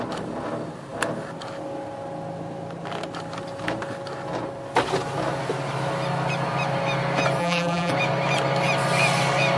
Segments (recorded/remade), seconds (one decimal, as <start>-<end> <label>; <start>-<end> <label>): 0.0-7.4 recorded; 7.4-7.9 remade; 7.9-9.6 recorded